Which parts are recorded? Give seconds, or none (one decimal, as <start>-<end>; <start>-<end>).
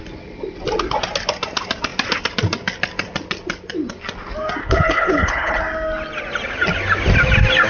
0.0-4.6; 5.6-7.7